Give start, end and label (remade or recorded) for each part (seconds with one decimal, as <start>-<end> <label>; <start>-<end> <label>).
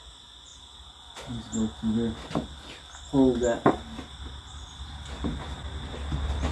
0.0-6.5 recorded